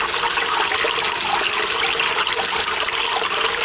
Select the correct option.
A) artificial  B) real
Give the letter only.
B